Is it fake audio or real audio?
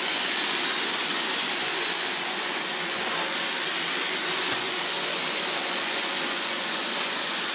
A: fake